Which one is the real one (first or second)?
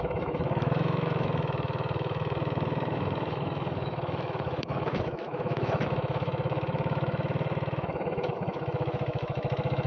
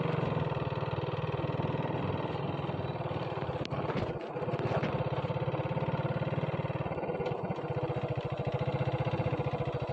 second